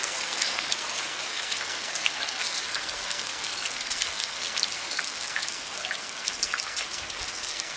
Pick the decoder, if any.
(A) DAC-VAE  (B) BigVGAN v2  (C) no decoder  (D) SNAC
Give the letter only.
D